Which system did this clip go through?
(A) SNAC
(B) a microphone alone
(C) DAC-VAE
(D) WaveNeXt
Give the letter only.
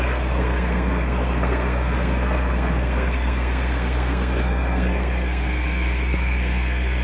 A